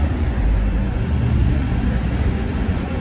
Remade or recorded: remade